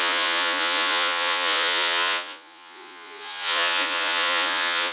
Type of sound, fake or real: fake